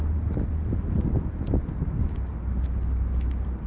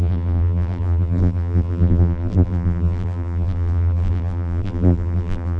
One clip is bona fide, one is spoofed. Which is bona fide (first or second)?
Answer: first